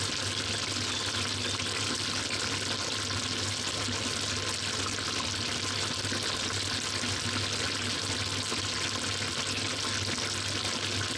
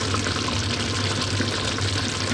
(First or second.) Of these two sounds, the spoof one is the second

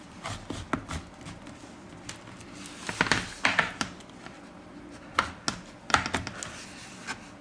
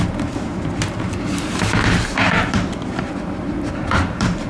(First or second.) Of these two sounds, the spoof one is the second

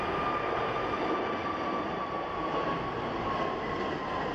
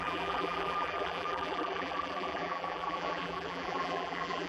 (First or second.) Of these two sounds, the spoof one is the second